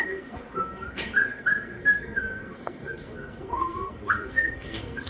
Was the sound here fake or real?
fake